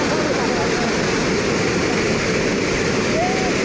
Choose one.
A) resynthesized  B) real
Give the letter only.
B